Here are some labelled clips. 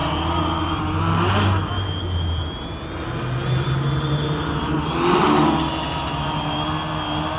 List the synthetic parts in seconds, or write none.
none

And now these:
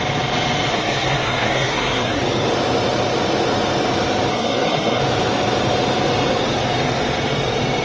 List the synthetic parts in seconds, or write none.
0.7-2.2 (codec, SNAC); 4.3-5.0

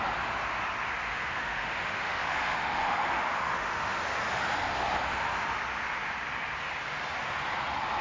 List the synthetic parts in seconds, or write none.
1.1-4.0 (autoencoder, DAC-VAE)